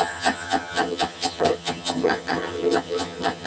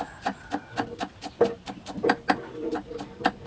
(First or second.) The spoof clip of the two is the first